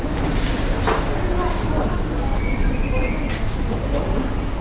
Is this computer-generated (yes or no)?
no